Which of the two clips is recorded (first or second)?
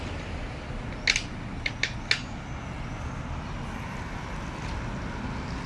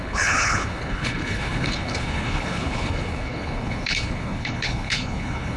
first